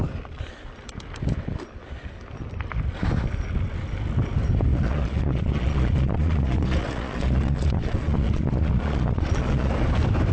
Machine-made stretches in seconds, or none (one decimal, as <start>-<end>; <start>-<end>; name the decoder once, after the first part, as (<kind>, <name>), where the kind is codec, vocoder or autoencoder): 4.7-9.7 (vocoder, Vocos)